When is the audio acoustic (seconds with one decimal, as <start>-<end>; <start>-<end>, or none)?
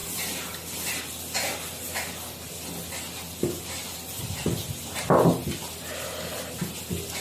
0.0-7.2